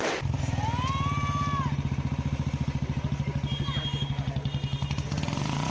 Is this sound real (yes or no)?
yes